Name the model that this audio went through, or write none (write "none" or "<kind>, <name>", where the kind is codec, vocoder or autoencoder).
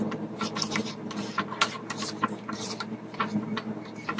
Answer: vocoder, BigVGAN v2